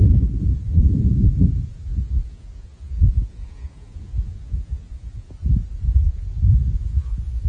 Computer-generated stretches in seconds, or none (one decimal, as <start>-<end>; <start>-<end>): 0.0-5.4; 6.1-7.5